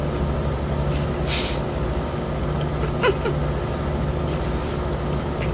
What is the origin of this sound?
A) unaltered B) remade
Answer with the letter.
A